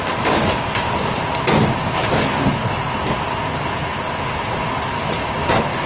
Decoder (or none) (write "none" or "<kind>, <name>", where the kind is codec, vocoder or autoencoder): none